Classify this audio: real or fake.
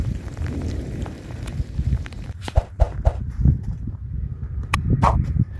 fake